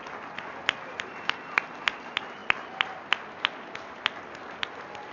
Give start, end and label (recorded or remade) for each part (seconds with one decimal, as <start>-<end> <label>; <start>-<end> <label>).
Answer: 0.0-5.1 recorded